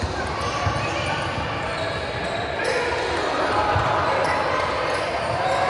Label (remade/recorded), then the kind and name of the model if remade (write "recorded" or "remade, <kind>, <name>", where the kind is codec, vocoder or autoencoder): recorded